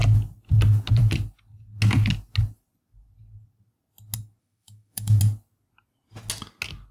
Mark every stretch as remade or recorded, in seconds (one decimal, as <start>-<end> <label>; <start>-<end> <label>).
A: 0.0-4.4 recorded; 4.4-5.2 remade; 5.2-6.9 recorded